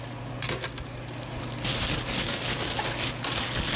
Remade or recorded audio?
recorded